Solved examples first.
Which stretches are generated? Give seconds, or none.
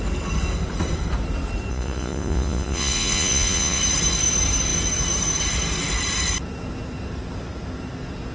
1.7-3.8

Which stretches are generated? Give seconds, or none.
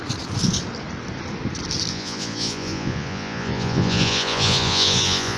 1.9-5.4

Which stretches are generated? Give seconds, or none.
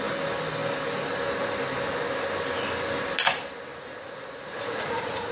3.7-5.3